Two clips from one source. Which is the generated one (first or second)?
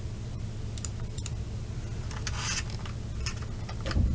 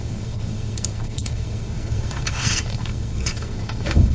second